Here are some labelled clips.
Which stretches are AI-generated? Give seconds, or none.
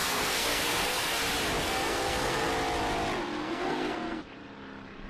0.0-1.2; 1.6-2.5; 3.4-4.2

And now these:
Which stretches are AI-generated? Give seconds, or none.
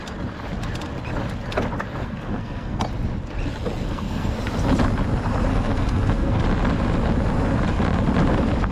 2.0-2.8; 3.8-4.4; 5.5-6.4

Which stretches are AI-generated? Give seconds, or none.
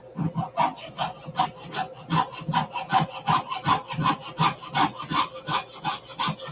none